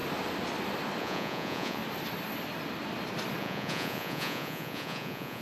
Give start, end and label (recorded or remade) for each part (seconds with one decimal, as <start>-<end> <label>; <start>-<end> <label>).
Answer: 0.0-1.0 recorded; 1.0-1.8 remade; 1.8-3.4 recorded; 3.4-5.4 remade